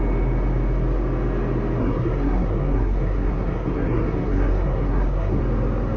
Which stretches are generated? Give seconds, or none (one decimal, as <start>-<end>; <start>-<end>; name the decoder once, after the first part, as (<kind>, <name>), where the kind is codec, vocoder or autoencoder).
1.8-5.4 (codec, SNAC)